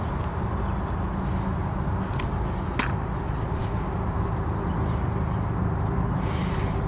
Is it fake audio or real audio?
real